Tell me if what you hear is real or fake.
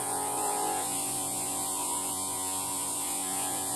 fake